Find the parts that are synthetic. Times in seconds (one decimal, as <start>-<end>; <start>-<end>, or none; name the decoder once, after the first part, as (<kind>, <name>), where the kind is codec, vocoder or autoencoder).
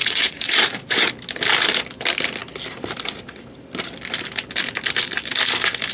0.0-1.1 (vocoder, Vocos)